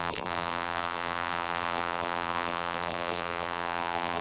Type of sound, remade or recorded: remade